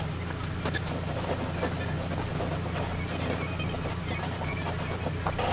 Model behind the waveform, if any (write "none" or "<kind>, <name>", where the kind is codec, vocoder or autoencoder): none